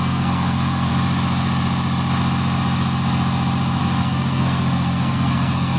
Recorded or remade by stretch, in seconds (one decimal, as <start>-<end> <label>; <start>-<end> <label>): 0.0-0.9 remade; 0.9-3.8 recorded; 3.8-5.8 remade

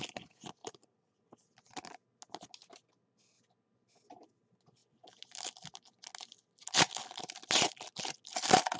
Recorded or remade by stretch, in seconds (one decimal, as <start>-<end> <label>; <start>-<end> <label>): 0.0-0.6 recorded; 0.6-1.2 remade; 1.2-8.8 recorded

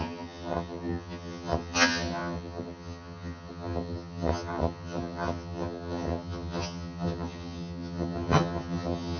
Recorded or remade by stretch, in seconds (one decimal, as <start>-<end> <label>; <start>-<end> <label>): 0.0-9.2 remade

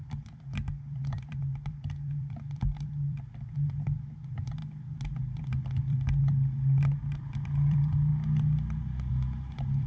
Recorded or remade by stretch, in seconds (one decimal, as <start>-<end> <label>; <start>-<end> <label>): 0.0-4.6 remade; 4.6-5.8 recorded; 5.8-8.1 remade; 8.1-9.1 recorded; 9.1-9.9 remade

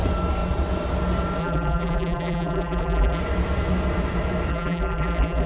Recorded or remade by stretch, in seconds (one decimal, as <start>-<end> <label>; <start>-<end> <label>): 0.0-1.4 recorded; 1.4-3.2 remade; 3.2-4.5 recorded; 4.5-5.5 remade

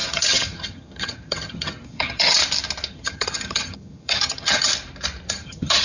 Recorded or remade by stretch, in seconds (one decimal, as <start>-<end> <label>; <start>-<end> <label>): 0.0-2.4 remade; 2.4-2.9 recorded; 2.9-4.7 remade; 4.7-5.3 recorded; 5.3-5.8 remade